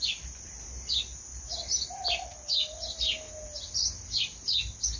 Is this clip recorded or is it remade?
recorded